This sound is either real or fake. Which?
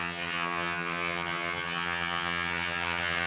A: fake